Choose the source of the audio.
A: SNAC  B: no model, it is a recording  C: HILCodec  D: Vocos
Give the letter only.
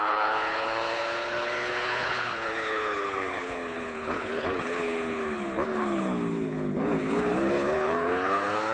C